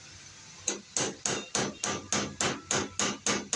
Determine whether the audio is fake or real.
real